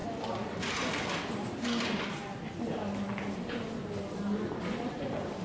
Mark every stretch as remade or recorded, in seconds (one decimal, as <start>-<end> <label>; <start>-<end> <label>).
0.0-2.2 remade; 2.2-5.4 recorded